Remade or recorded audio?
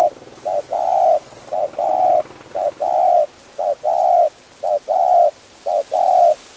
recorded